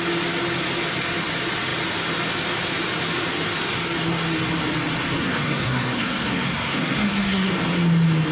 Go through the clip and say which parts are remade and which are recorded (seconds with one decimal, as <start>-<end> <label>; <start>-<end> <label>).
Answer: 0.0-5.2 recorded; 5.2-7.5 remade; 7.5-8.3 recorded